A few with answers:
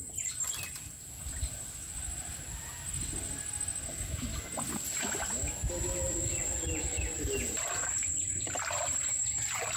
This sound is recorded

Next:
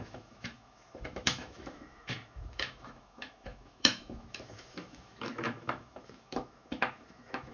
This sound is remade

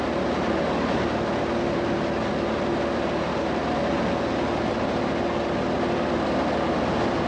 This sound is recorded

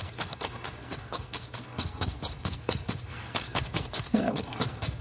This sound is remade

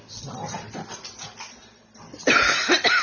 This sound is recorded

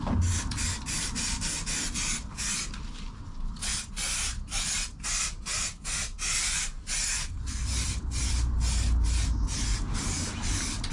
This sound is recorded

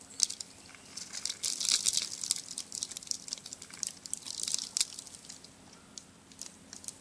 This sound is recorded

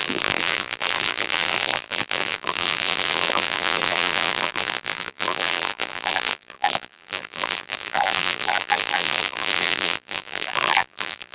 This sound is remade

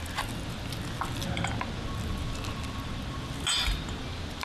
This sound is recorded